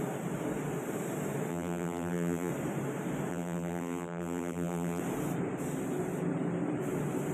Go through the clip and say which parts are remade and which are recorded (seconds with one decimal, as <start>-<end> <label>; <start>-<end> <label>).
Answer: 0.0-1.5 recorded; 1.5-2.5 remade; 2.5-3.3 recorded; 3.3-5.0 remade; 5.0-7.3 recorded